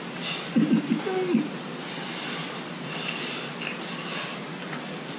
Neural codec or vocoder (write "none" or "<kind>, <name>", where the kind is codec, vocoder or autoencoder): none